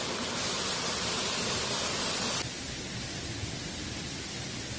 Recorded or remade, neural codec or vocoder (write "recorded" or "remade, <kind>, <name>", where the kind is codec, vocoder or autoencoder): recorded